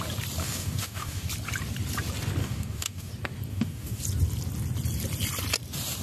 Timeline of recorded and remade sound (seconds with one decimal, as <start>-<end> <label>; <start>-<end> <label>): 0.0-0.4 recorded; 0.4-1.3 remade; 1.3-2.4 recorded; 2.4-3.1 remade; 3.1-3.5 recorded; 3.5-4.0 remade; 4.0-6.0 recorded